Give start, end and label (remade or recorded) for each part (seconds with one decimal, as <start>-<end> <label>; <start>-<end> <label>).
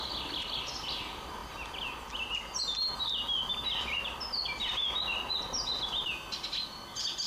0.0-7.3 recorded